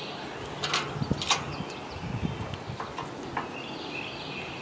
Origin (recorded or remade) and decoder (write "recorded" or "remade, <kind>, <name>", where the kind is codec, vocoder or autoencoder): recorded